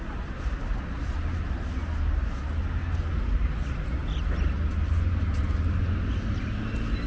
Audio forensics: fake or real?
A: real